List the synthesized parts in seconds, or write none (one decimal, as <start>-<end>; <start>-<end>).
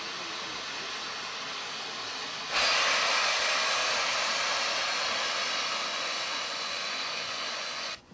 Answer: 5.9-8.1